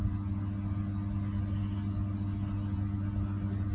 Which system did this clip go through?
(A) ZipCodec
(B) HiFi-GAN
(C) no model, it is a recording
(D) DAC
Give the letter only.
C